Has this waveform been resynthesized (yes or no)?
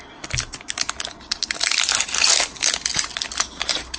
no